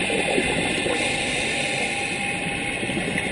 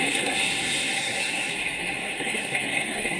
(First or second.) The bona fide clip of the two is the first